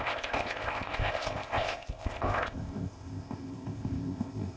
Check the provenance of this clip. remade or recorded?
remade